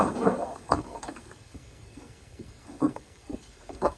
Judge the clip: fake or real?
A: fake